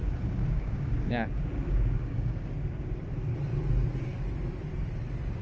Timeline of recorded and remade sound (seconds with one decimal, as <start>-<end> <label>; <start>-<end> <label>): 0.0-2.9 remade; 2.9-5.4 recorded